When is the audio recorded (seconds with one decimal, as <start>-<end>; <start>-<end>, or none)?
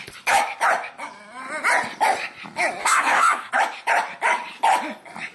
0.0-2.8; 3.5-5.3